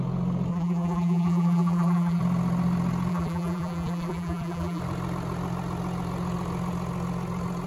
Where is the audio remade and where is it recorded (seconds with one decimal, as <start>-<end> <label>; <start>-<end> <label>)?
0.0-0.5 recorded; 0.5-2.2 remade; 2.2-3.1 recorded; 3.1-4.8 remade; 4.8-7.7 recorded